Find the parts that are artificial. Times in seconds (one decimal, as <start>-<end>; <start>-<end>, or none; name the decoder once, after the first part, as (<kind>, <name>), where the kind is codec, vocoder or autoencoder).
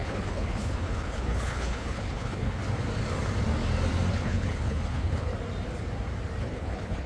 0.0-2.6 (codec, HILCodec); 4.1-5.3; 6.4-7.1